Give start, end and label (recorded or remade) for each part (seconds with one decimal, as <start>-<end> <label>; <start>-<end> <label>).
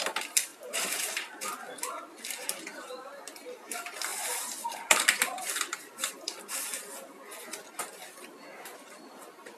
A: 0.0-0.5 recorded; 0.5-1.8 remade; 1.8-4.1 recorded; 4.1-6.1 remade; 6.1-9.6 recorded